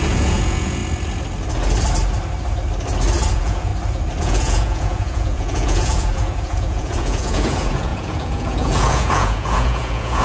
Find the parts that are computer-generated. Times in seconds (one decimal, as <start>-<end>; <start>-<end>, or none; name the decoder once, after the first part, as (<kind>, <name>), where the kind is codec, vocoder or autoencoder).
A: 0.0-0.8 (vocoder, Vocos); 3.3-3.7; 4.2-10.2